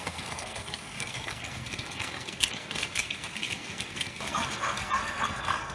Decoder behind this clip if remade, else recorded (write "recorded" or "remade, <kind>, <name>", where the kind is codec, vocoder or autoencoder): remade, codec, SNAC